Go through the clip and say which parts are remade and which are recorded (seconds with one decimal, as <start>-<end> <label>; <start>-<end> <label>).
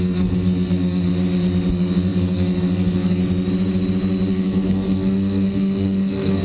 0.0-1.1 remade; 1.1-1.7 recorded; 1.7-3.2 remade; 3.2-4.3 recorded; 4.3-6.4 remade